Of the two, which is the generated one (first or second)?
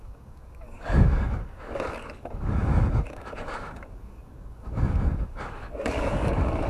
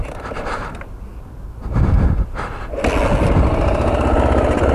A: first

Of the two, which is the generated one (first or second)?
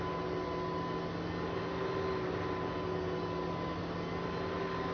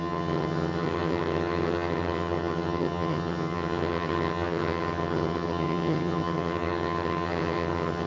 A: second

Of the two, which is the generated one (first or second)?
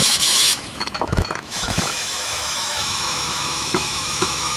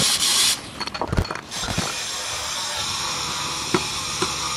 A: first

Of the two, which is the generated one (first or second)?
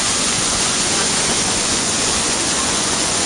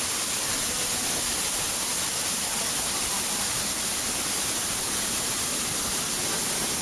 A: first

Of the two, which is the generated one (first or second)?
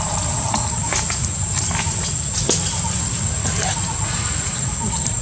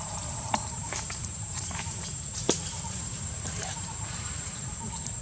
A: second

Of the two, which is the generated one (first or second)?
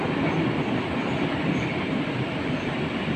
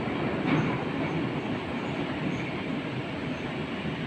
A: first